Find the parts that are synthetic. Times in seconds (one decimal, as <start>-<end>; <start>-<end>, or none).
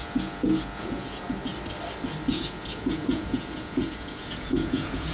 0.0-1.5; 2.3-5.1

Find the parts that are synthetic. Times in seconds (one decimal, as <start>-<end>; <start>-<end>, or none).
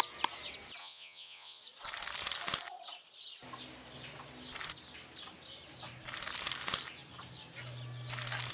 0.8-1.6